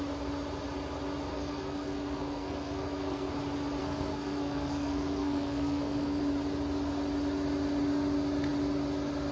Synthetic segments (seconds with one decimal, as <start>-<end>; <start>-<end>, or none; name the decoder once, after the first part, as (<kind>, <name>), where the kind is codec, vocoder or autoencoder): 1.3-3.3 (codec, SNAC); 3.8-6.2